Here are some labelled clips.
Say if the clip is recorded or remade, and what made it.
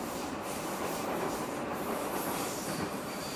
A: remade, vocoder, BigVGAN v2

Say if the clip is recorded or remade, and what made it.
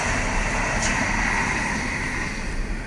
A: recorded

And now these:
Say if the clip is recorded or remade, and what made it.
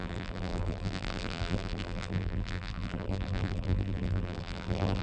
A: remade, vocoder, BigVGAN v2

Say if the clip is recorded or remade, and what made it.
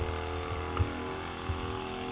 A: recorded